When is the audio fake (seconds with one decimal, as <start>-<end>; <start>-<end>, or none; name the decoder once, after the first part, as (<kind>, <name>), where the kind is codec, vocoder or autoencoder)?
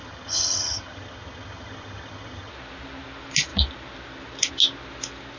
0.0-2.5 (vocoder, HiFi-GAN)